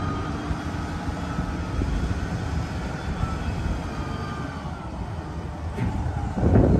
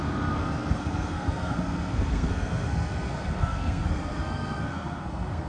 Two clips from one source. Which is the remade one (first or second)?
second